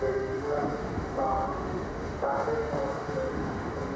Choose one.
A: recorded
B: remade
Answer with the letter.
B